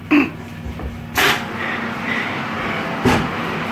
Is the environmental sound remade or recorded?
recorded